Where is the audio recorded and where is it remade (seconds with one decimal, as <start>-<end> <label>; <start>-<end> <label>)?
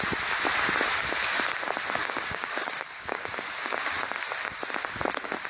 0.0-2.0 recorded; 2.0-4.0 remade; 4.0-5.5 recorded